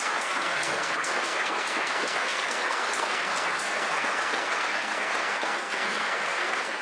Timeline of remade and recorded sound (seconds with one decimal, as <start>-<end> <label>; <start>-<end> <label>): 0.0-6.8 remade